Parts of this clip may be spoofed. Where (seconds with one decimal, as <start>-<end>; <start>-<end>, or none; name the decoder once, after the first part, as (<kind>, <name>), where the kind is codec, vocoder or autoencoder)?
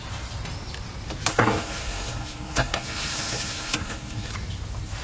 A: 1.3-4.3 (codec, SNAC)